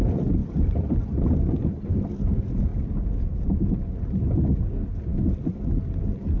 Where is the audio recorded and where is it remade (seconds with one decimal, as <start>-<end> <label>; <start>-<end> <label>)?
0.0-6.4 recorded